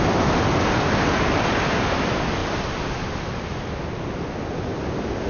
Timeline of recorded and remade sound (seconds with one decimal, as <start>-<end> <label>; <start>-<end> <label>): 0.0-5.3 recorded

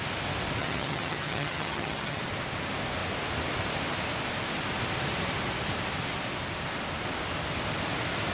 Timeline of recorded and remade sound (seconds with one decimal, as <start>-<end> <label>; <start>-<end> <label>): 0.0-0.6 recorded; 0.6-2.2 remade; 2.2-8.3 recorded

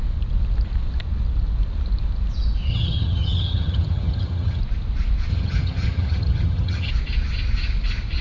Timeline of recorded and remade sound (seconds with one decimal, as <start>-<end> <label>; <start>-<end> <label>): 0.0-2.7 recorded; 2.7-4.6 remade; 4.6-5.3 recorded; 5.3-6.9 remade; 6.9-8.2 recorded